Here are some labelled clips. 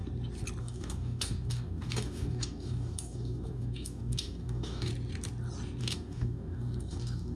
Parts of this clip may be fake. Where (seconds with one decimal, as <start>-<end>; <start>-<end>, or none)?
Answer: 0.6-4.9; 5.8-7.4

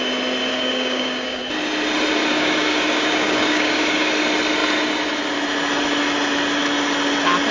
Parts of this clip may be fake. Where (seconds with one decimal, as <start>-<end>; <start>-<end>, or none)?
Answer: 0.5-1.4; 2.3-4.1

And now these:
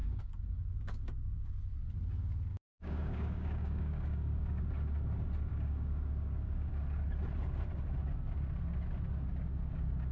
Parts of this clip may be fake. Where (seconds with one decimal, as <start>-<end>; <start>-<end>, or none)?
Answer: 0.0-1.5; 2.5-4.6; 5.5-6.7